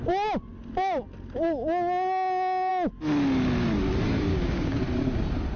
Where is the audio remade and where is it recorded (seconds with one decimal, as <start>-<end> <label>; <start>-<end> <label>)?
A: 0.0-4.3 recorded; 4.3-4.8 remade; 4.8-5.6 recorded